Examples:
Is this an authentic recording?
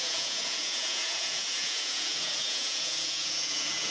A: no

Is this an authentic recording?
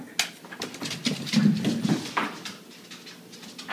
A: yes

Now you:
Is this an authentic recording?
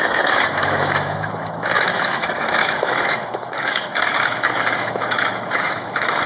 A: no